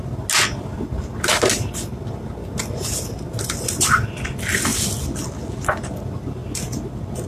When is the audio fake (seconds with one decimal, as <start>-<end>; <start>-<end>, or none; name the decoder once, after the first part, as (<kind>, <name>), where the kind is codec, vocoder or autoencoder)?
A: none